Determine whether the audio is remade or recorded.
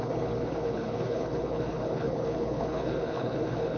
remade